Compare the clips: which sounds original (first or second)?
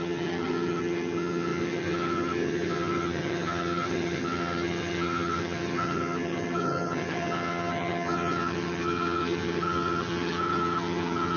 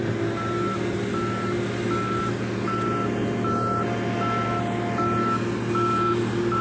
second